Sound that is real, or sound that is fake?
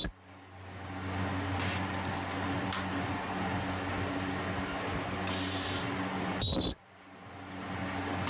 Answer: real